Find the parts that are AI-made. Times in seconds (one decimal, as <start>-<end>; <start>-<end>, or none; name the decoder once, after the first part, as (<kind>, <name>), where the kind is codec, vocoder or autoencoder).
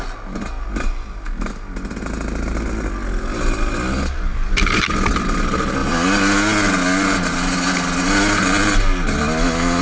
none